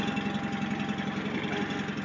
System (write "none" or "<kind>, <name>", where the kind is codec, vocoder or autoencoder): none